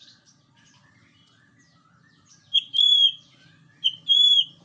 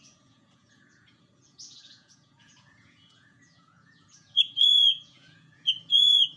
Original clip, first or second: first